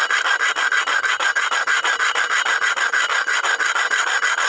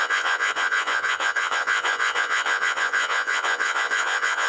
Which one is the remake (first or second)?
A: second